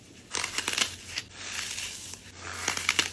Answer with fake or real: real